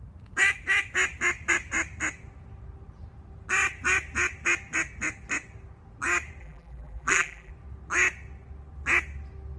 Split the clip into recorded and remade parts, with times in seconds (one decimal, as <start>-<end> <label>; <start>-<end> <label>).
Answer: 0.0-6.4 recorded; 6.4-7.5 remade; 7.5-9.6 recorded